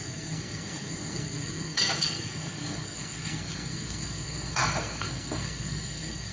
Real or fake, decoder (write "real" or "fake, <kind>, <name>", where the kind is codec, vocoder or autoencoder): fake, codec, SNAC